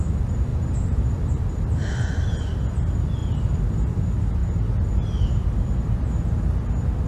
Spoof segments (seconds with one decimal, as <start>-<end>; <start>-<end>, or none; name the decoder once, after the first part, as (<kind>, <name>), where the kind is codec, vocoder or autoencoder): 0.5-1.4 (vocoder, BigVGAN v2); 3.2-3.7